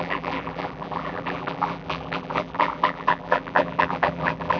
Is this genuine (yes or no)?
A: no